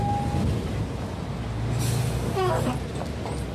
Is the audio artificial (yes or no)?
no